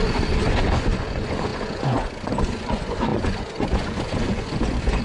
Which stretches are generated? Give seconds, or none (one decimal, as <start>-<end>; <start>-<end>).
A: 0.0-5.0